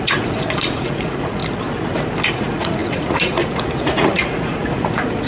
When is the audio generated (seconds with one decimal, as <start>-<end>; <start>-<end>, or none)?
0.0-1.4; 2.3-5.3